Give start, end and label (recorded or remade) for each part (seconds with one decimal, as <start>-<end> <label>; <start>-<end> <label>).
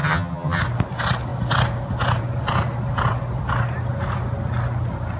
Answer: 0.0-0.6 remade; 0.6-5.2 recorded